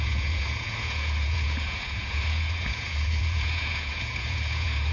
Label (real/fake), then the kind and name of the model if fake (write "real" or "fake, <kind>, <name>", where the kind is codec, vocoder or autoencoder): fake, vocoder, Vocos